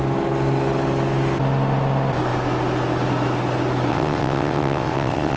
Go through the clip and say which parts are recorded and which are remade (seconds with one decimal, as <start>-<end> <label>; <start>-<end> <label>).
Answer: 0.0-3.9 recorded; 3.9-5.4 remade